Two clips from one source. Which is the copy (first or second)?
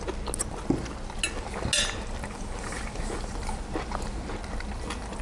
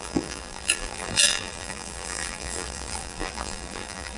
second